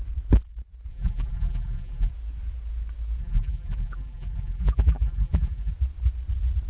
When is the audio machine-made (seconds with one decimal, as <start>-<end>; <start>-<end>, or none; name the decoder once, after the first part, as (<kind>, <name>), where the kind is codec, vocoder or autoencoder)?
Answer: 0.9-2.1 (vocoder, BigVGAN v2); 3.2-5.7